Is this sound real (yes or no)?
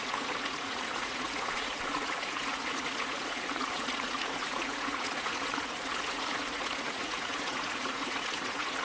no